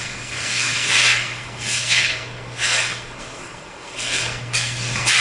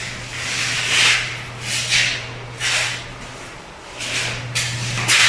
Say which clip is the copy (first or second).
first